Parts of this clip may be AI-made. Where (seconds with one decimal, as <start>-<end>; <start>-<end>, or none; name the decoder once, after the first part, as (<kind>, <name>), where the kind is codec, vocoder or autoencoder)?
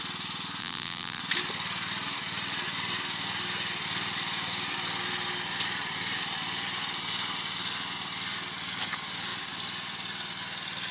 0.6-1.2 (vocoder, BigVGAN v2)